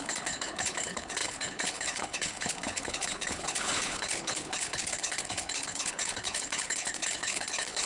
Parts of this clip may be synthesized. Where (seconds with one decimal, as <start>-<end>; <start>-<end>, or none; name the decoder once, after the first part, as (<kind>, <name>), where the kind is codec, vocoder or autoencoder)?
0.0-7.9 (codec, HILCodec)

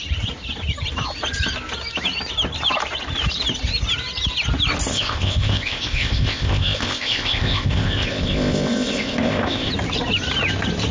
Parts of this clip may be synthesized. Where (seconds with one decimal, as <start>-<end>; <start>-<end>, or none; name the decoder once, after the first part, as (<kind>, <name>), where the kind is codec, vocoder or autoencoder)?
4.9-9.7 (codec, ZipCodec)